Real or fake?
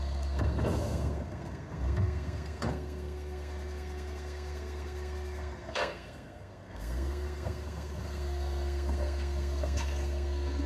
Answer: fake